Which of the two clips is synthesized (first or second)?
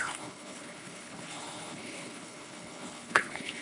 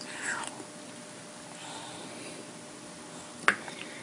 first